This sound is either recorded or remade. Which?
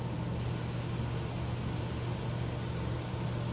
recorded